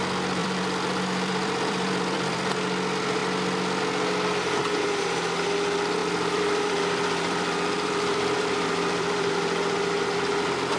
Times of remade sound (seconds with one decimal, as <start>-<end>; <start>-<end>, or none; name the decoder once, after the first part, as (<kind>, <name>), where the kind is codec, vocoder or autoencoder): 0.4-2.5 (vocoder, BigVGAN v2); 6.0-9.3